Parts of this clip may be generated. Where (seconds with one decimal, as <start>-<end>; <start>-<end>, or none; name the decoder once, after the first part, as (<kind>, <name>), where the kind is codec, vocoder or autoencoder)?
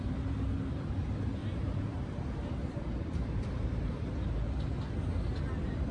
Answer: 1.4-4.1 (vocoder, BigVGAN v2)